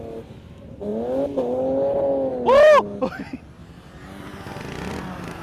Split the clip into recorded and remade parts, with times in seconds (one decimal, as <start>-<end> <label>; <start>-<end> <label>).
0.0-5.4 recorded